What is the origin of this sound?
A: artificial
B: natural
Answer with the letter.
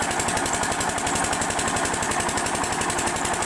B